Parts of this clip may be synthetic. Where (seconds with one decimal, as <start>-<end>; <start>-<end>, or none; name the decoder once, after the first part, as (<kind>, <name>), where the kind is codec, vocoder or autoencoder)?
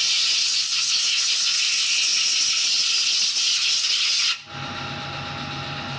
none